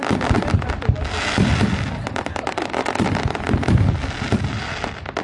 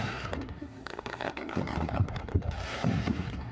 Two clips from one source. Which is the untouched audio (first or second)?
first